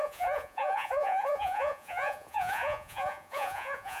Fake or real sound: fake